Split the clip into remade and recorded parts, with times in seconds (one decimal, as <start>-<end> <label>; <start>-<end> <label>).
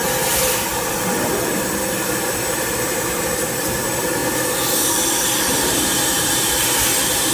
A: 0.0-0.7 recorded; 0.7-3.8 remade; 3.8-4.2 recorded; 4.2-6.5 remade; 6.5-7.3 recorded